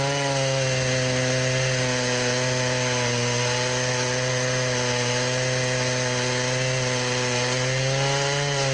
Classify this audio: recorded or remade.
recorded